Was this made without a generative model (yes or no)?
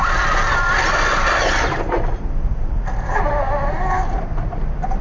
yes